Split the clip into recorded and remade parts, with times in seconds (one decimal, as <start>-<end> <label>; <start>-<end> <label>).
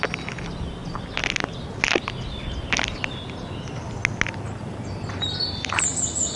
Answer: 0.0-6.4 recorded